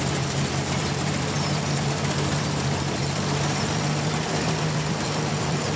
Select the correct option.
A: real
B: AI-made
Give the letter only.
B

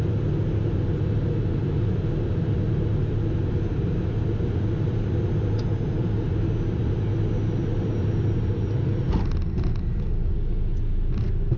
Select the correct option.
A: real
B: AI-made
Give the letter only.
A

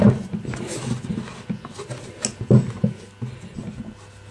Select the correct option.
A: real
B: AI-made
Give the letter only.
A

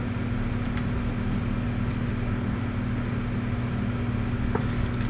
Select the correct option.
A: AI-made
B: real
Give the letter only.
B